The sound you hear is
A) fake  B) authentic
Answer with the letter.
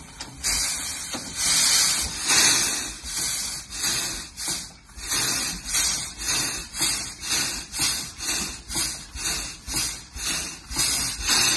B